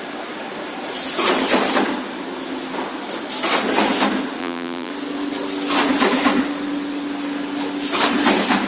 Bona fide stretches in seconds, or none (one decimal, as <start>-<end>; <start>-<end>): 0.0-4.4; 4.9-8.7